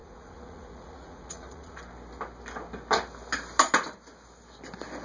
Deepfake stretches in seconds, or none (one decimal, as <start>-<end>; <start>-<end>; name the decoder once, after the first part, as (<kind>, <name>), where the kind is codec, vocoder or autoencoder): 0.0-1.8 (vocoder, Vocos)